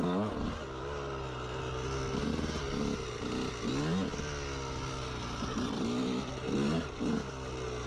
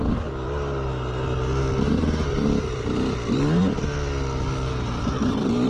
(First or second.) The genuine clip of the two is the first